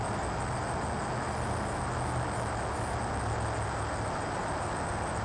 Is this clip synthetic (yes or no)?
no